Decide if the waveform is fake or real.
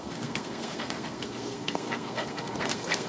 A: fake